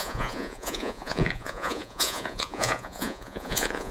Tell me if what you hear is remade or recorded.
remade